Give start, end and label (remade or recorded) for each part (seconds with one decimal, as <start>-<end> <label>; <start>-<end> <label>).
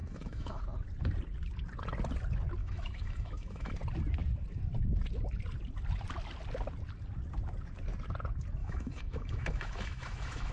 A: 0.0-0.6 remade; 0.6-2.6 recorded; 2.6-3.7 remade; 3.7-8.6 recorded; 8.6-10.5 remade